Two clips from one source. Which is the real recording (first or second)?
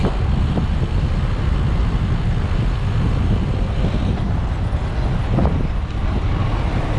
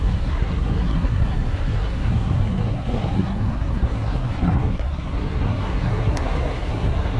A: first